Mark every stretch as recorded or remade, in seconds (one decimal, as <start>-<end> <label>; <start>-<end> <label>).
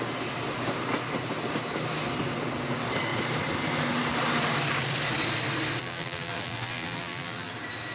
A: 0.0-5.8 recorded; 5.8-7.5 remade; 7.5-7.9 recorded